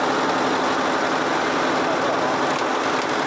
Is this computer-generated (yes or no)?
no